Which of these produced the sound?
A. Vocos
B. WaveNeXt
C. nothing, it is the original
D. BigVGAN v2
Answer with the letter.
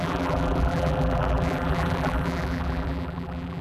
D